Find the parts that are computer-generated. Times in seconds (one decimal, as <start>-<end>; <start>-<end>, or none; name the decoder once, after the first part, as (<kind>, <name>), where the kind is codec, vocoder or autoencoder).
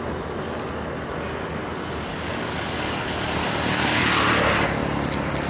2.1-4.0 (codec, DAC)